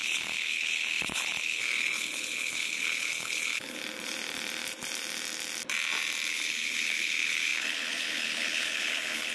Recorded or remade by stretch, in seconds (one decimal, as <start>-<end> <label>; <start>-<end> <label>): 0.0-3.8 remade; 3.8-6.3 recorded; 6.3-9.3 remade